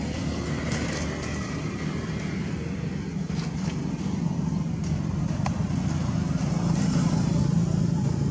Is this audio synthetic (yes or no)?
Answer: no